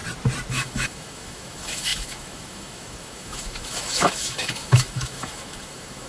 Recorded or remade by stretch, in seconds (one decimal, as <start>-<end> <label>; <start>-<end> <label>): 0.0-0.5 recorded; 0.5-6.1 remade